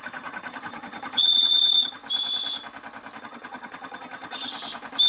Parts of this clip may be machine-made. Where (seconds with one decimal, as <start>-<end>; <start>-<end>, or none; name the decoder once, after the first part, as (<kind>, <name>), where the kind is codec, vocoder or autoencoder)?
0.0-2.0 (vocoder, HiFi-GAN); 3.2-4.5